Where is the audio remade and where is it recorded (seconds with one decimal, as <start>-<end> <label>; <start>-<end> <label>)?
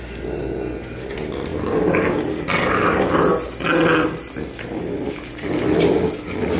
0.0-6.6 recorded